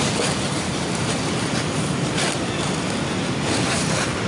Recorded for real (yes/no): yes